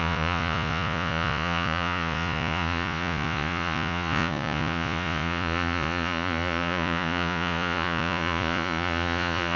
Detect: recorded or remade remade